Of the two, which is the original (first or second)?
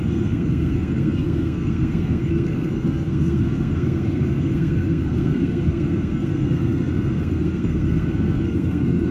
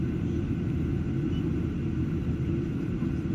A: second